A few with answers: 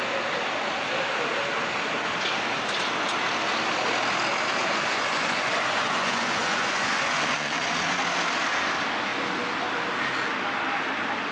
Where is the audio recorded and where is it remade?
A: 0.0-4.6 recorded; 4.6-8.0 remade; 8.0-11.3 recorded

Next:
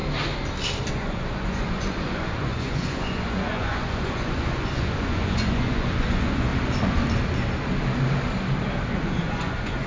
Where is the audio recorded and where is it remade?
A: 0.0-0.9 recorded; 0.9-6.5 remade; 6.5-8.9 recorded; 8.9-9.9 remade

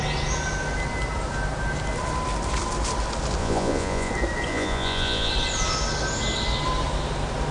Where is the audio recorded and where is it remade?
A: 0.0-3.4 recorded; 3.4-4.1 remade; 4.1-4.5 recorded; 4.5-5.3 remade; 5.3-7.5 recorded

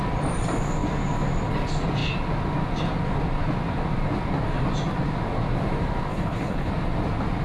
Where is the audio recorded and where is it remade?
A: 0.0-6.1 recorded; 6.1-6.7 remade; 6.7-7.4 recorded